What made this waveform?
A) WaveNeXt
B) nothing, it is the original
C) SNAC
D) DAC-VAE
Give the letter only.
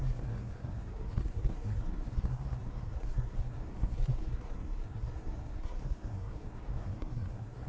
C